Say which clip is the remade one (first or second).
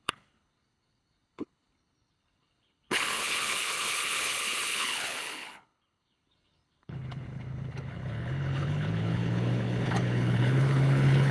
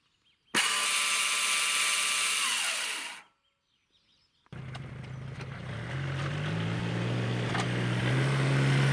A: first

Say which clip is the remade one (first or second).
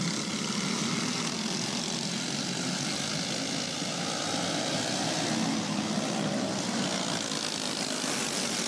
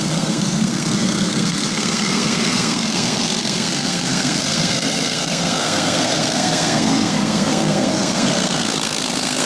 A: second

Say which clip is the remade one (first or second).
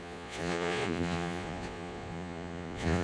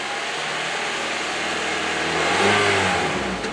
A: first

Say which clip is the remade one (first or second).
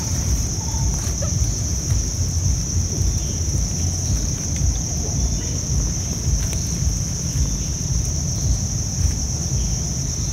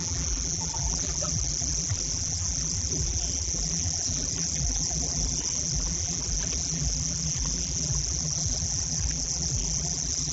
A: second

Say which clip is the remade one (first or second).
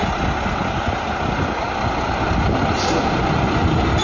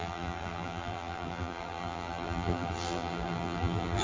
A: second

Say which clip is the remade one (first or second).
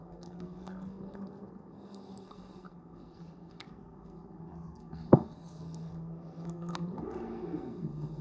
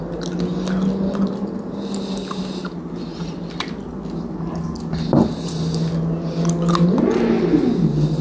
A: first